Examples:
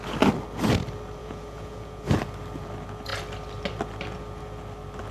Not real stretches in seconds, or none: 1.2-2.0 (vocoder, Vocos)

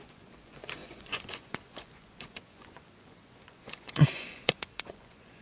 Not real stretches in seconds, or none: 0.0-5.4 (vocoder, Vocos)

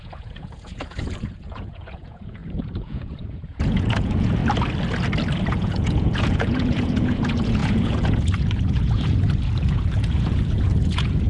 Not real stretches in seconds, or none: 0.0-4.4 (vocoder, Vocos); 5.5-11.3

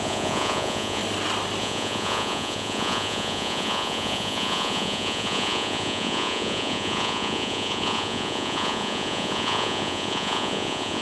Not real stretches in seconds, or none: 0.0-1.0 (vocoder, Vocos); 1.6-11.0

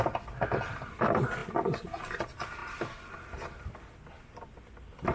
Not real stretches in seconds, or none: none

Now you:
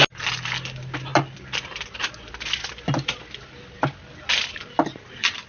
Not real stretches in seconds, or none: none

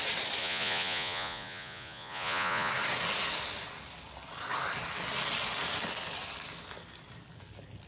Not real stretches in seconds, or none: 0.4-2.7 (vocoder, Vocos)